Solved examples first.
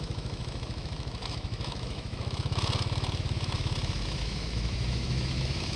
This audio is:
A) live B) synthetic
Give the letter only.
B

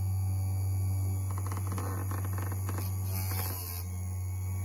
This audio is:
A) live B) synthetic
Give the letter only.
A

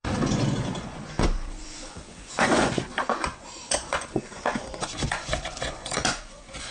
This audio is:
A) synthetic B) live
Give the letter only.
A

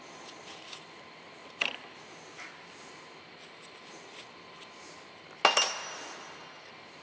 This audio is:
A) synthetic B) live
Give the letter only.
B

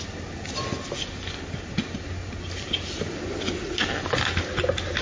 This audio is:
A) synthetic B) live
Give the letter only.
B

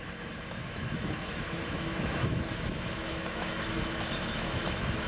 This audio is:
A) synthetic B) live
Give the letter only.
A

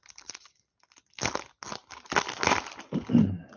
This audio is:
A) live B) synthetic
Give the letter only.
A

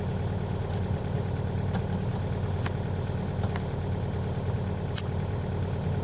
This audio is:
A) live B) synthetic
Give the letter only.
A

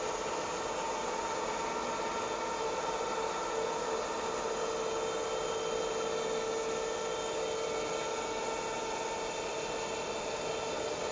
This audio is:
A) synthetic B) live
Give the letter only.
B